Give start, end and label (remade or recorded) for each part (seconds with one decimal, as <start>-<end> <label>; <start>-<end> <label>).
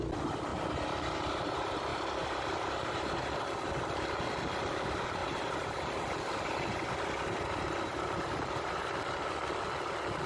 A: 0.0-0.5 recorded; 0.5-1.5 remade; 1.5-1.9 recorded; 1.9-3.4 remade; 3.4-5.2 recorded; 5.2-6.0 remade; 6.0-7.9 recorded; 7.9-8.9 remade; 8.9-10.3 recorded